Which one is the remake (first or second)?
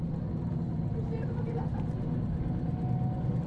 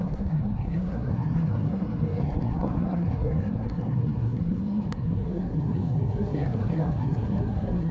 second